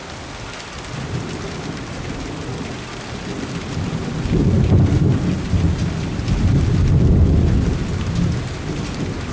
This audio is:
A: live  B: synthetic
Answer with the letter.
A